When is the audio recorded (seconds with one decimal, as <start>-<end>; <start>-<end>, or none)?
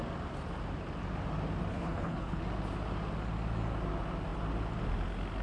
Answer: 0.0-1.7; 2.4-5.4